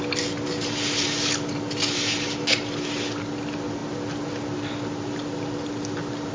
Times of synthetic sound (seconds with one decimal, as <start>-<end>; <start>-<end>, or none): none